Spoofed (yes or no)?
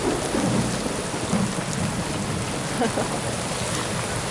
no